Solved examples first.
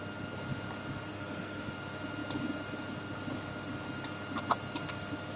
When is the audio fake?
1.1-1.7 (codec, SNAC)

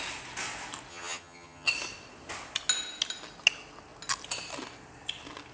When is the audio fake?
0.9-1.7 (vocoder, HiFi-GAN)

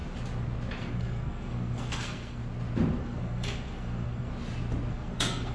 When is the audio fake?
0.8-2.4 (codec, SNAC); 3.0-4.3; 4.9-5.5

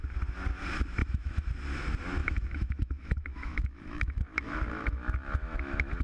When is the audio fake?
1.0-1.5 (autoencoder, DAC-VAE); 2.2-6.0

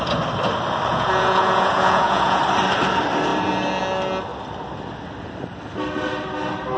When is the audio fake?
0.9-2.4 (vocoder, Vocos)